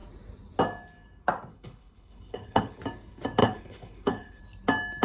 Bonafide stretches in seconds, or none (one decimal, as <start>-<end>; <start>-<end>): 0.0-1.5; 2.8-3.4; 4.4-5.0

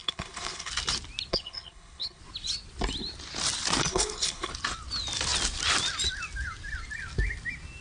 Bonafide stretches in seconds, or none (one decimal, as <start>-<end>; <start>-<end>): 0.7-1.3; 2.2-3.9; 4.5-7.8

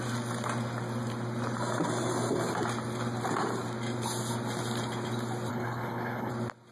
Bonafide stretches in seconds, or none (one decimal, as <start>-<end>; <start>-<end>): 0.0-5.5; 6.3-6.7

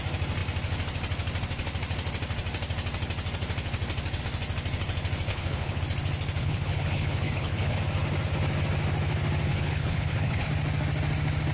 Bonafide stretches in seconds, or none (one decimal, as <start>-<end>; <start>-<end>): 0.0-5.3; 5.8-6.4; 7.8-9.5; 10.5-11.5

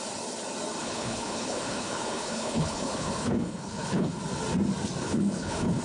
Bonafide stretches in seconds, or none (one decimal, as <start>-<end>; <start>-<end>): 0.0-0.8; 4.2-5.0

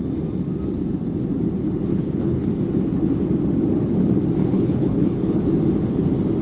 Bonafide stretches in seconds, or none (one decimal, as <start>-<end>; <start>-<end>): 0.0-1.9; 2.5-4.4; 5.4-6.4

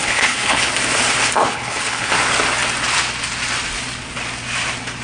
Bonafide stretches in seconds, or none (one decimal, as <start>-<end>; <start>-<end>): 0.7-1.4; 2.1-5.0